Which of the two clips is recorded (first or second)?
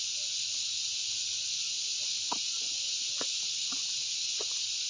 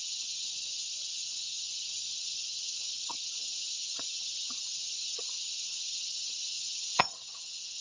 first